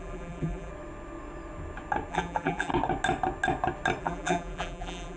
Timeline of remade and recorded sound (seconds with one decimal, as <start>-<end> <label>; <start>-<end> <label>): 0.0-0.7 remade; 0.7-2.1 recorded; 2.1-2.7 remade; 2.7-4.0 recorded; 4.0-5.2 remade